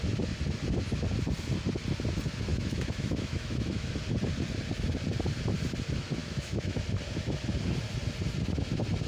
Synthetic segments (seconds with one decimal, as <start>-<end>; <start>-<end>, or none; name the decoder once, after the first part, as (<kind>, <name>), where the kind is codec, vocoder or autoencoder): 2.5-3.9 (autoencoder, DAC-VAE); 6.2-6.8

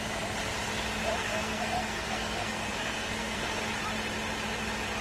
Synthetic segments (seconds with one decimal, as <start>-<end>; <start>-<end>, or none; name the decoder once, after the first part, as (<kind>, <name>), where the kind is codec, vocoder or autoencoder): 1.2-3.6 (codec, SNAC)

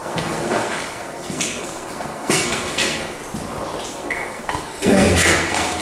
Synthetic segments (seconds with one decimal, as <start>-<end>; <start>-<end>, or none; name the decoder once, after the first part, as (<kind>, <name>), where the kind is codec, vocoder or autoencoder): 0.0-3.2 (codec, SNAC); 3.9-5.8

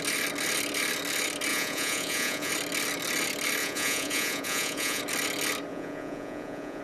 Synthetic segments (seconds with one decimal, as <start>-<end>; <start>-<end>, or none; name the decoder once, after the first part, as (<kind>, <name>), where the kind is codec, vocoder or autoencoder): 1.5-2.5 (vocoder, Vocos); 3.6-5.0; 5.7-6.8

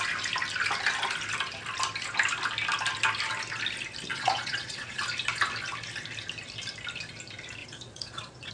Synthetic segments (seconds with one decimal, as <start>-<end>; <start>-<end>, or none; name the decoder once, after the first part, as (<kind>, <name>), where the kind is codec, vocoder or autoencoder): 4.1-5.0 (vocoder, Vocos); 7.6-8.5